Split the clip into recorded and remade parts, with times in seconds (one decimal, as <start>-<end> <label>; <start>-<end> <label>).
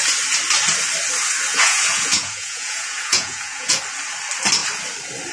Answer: 0.0-1.5 recorded; 1.5-3.8 remade; 3.8-5.3 recorded